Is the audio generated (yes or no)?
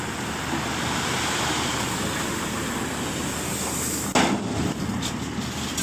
no